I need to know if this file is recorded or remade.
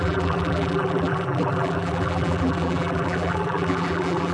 remade